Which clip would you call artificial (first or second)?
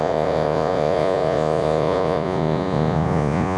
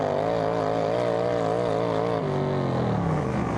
first